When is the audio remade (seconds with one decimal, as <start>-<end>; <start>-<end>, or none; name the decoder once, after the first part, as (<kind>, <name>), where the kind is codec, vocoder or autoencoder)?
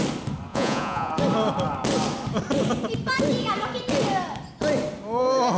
0.5-1.1 (vocoder, Vocos)